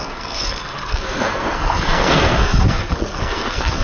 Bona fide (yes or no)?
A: no